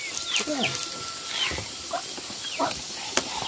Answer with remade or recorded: recorded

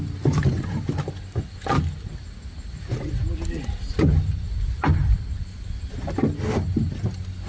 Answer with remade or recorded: recorded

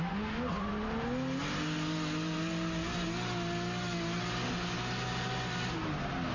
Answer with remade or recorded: recorded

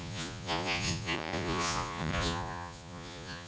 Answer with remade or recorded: remade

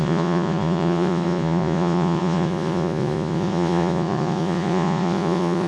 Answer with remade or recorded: remade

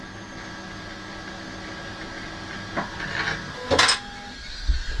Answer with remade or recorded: recorded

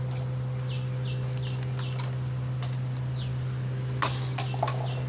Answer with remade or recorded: recorded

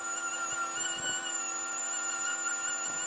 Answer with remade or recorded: recorded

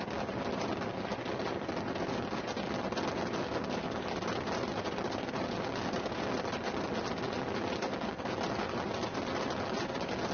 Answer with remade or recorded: recorded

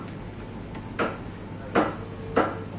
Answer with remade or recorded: recorded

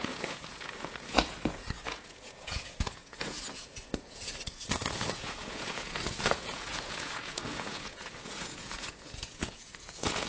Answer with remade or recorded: remade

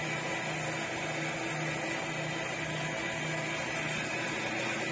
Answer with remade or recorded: recorded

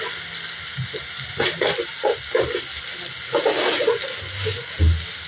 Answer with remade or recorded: recorded